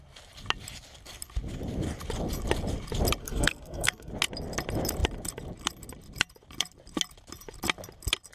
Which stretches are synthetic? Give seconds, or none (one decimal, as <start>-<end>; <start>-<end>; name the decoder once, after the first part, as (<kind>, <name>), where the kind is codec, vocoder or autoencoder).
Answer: 3.2-4.1 (codec, SNAC)

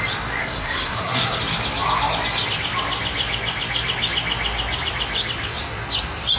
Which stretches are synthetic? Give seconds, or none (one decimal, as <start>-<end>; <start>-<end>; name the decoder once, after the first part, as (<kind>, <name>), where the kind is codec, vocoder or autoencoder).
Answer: 0.4-1.4 (codec, SNAC)

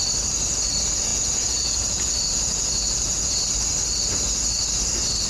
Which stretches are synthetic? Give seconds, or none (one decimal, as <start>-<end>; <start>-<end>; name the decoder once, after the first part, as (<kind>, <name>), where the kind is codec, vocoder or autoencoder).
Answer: 1.1-3.5 (vocoder, Vocos)